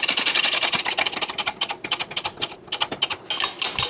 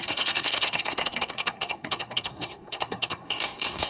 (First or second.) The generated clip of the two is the second